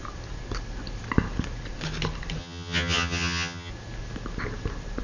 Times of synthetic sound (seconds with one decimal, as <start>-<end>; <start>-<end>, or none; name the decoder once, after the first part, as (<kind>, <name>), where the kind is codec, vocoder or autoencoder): 2.4-3.7 (vocoder, HiFi-GAN)